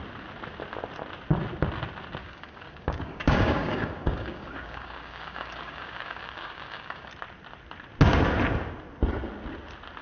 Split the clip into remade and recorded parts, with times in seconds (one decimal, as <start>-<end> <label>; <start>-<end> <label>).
0.0-2.2 recorded; 2.2-7.1 remade; 7.1-10.0 recorded